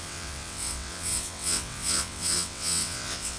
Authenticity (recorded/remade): remade